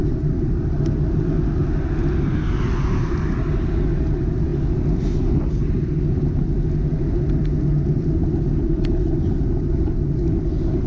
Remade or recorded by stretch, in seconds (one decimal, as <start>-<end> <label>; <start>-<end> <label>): 0.0-10.9 recorded